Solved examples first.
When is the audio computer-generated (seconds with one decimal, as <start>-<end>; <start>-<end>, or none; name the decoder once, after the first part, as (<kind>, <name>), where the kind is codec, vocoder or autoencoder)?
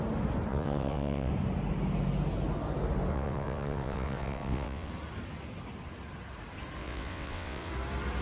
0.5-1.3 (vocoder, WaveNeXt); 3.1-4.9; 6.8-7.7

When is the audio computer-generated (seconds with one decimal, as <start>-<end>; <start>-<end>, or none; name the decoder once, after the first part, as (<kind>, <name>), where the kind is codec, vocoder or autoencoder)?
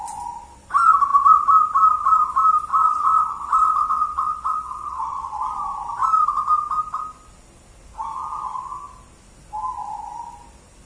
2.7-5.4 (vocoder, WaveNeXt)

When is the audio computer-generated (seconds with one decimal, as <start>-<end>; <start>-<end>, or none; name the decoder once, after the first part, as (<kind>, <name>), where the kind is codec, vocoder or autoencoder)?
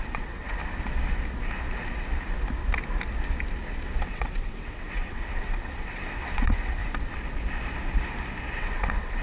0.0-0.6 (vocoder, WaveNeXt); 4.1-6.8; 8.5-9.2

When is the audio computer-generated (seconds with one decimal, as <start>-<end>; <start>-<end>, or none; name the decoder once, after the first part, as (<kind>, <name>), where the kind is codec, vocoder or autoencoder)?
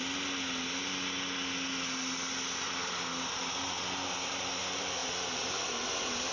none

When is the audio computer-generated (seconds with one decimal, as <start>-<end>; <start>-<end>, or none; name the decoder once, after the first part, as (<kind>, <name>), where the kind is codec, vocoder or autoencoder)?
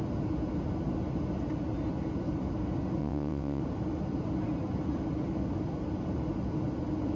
3.0-3.6 (vocoder, WaveNeXt)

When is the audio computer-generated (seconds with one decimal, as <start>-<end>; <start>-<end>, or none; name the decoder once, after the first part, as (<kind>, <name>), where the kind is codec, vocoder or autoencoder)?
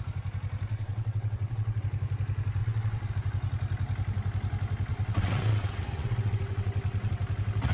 0.7-1.8 (vocoder, WaveNeXt); 2.6-3.1; 4.9-7.1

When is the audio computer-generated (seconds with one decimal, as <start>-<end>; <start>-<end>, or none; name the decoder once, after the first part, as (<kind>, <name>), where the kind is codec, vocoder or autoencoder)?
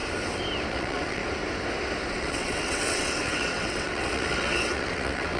0.7-1.2 (vocoder, WaveNeXt); 2.1-5.4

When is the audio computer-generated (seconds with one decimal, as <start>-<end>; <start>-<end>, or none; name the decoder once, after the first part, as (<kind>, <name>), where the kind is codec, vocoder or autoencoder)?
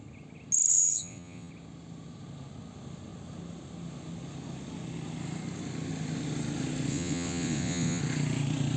0.7-1.5 (vocoder, WaveNeXt); 6.9-8.0